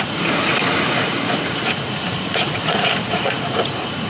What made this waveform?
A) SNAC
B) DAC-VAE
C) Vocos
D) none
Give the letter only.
C